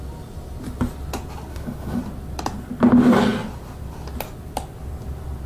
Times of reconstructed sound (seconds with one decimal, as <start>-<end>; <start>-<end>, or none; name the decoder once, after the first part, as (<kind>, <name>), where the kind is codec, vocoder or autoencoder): 1.5-2.0 (autoencoder, DAC-VAE)